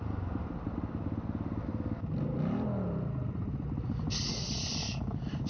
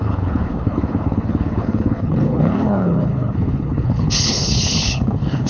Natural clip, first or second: first